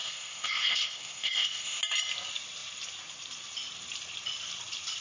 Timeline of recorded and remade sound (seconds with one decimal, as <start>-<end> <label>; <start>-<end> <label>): 0.0-1.8 remade; 1.8-5.0 recorded